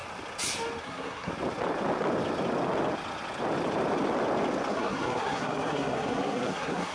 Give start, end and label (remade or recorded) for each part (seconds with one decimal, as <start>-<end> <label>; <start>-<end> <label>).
0.0-0.8 recorded; 0.8-1.3 remade; 1.3-4.7 recorded; 4.7-6.9 remade